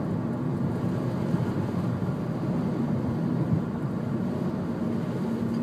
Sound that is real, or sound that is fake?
real